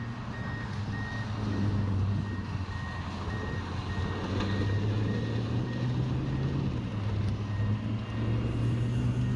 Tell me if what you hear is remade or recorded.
recorded